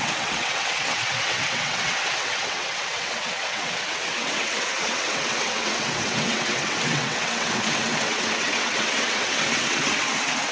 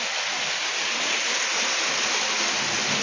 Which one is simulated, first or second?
first